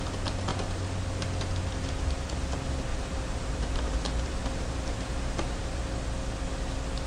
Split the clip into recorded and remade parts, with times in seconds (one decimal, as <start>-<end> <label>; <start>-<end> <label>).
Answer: 0.0-2.9 recorded; 2.9-5.8 remade; 5.8-7.1 recorded